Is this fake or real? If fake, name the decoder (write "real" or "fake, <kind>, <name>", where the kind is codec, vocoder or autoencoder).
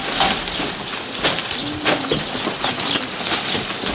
real